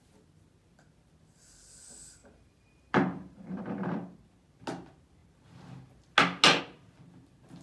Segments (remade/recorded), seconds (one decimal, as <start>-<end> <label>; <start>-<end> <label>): 0.0-2.2 recorded; 2.2-3.6 remade; 3.6-7.6 recorded